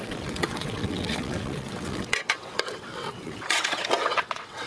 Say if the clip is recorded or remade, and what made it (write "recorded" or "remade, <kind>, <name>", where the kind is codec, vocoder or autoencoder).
remade, vocoder, WaveNeXt